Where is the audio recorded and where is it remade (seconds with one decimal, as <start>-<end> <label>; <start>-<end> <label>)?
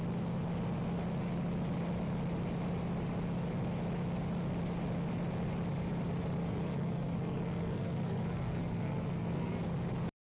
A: 0.0-6.5 recorded; 6.5-9.6 remade; 9.6-10.4 recorded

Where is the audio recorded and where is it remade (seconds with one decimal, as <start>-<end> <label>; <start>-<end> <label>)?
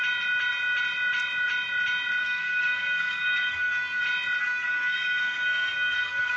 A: 0.0-2.2 recorded; 2.2-4.0 remade; 4.0-4.4 recorded; 4.4-6.4 remade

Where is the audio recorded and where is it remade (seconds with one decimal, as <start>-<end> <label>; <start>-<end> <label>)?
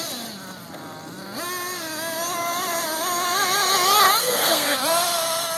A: 0.0-4.2 recorded; 4.2-4.8 remade; 4.8-5.6 recorded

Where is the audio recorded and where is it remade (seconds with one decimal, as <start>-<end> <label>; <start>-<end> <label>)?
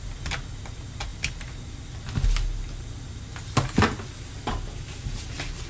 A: 0.0-5.7 recorded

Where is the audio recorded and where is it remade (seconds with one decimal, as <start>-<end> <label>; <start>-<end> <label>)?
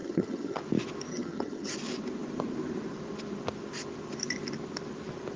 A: 0.0-0.6 remade; 0.6-1.1 recorded; 1.1-1.7 remade; 1.7-5.4 recorded